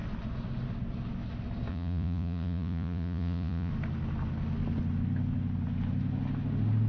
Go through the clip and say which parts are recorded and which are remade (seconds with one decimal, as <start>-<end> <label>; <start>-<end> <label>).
0.0-1.7 recorded; 1.7-3.7 remade; 3.7-6.9 recorded